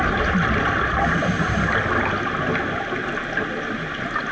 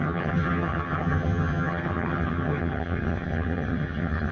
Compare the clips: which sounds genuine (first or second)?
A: first